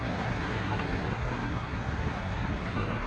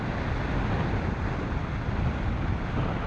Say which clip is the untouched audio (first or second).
second